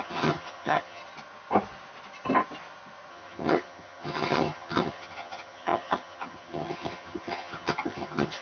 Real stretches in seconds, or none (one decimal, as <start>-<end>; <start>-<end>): 1.0-3.1